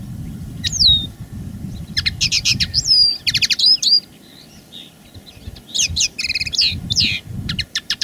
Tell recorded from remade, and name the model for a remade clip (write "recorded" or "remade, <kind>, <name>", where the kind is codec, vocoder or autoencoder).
remade, vocoder, BigVGAN v2